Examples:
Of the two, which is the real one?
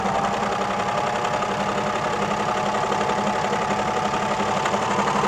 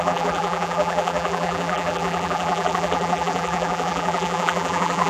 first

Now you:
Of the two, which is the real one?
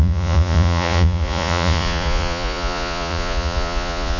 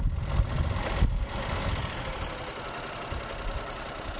second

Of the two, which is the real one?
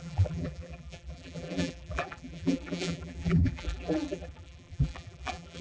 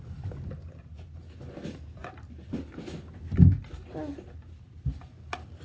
second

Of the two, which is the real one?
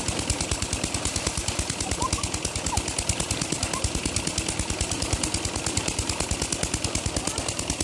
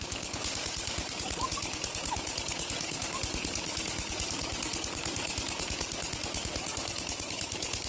first